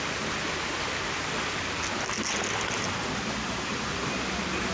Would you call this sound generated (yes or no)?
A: no